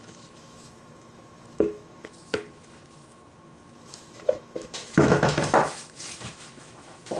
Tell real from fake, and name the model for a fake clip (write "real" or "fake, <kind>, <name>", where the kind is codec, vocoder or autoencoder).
fake, autoencoder, DAC-VAE